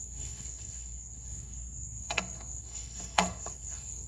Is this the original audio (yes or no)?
no